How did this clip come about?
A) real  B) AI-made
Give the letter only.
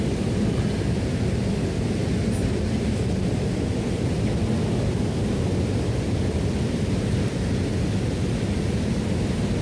A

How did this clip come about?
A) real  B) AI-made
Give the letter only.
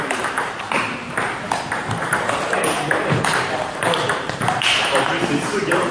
B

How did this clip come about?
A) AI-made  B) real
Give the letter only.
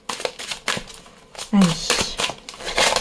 B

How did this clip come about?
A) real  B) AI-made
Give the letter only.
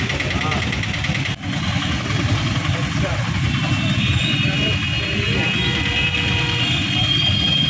A